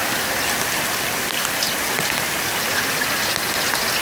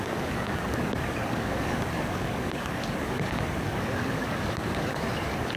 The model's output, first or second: second